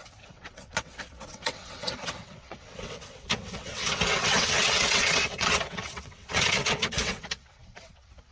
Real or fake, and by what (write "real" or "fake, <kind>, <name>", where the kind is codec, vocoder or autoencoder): fake, vocoder, WaveNeXt